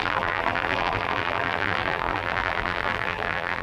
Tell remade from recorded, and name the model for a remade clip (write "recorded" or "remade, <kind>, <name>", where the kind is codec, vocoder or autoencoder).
remade, vocoder, BigVGAN v2